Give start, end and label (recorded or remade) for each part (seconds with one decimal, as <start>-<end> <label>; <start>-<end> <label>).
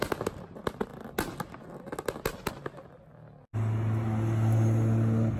0.0-5.4 recorded